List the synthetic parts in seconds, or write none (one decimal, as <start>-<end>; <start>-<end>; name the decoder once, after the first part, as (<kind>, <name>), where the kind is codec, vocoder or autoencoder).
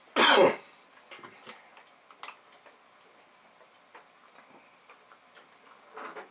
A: none